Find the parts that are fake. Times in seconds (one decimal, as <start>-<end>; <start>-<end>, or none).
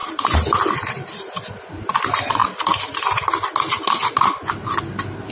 0.0-1.9; 2.4-3.3